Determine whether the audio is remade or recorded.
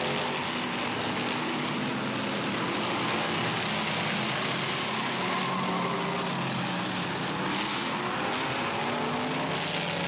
recorded